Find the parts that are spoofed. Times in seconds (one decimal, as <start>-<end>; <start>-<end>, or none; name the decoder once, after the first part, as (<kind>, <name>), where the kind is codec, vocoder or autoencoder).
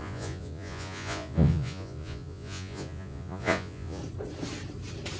0.0-4.0 (vocoder, Vocos)